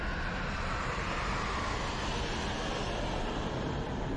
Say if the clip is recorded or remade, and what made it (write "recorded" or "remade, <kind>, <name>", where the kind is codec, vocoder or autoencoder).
recorded